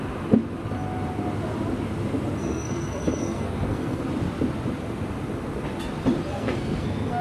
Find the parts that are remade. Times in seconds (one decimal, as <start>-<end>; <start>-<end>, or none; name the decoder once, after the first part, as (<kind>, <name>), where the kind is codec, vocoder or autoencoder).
2.4-4.0 (codec, SNAC); 6.3-7.2